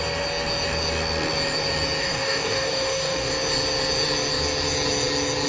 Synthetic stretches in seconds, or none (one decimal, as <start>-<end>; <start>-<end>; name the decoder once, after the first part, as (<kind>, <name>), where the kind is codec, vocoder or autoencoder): 2.0-3.3 (codec, DAC)